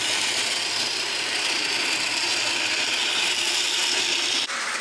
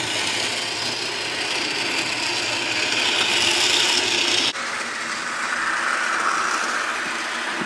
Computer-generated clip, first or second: first